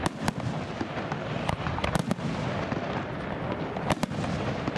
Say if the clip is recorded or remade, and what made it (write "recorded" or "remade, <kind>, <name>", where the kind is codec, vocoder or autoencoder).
recorded